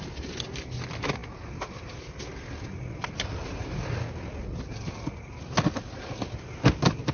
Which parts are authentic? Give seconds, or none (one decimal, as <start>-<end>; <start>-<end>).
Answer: 0.0-7.1